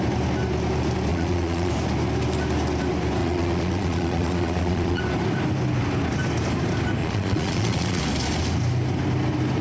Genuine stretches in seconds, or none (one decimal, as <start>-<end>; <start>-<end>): 0.0-1.1; 1.7-3.2; 5.0-7.0; 8.0-9.6

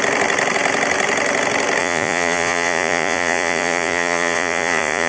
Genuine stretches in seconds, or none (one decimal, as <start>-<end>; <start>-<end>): 0.0-1.8

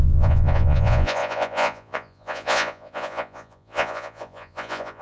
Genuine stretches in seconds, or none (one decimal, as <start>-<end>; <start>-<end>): none

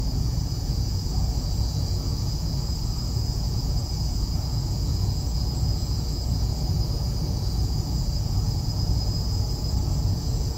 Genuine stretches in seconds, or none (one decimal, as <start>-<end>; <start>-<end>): none

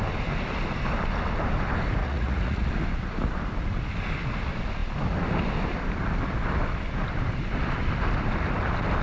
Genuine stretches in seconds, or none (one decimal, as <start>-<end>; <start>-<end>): 0.0-2.0; 2.7-9.0

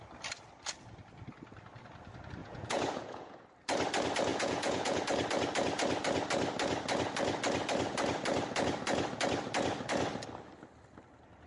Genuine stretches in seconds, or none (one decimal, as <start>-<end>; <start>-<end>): 0.0-2.4; 3.4-4.3; 5.0-11.5

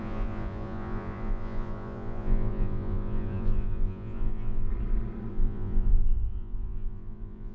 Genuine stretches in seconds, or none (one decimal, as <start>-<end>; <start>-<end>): 4.7-5.3